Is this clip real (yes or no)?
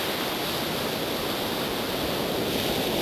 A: yes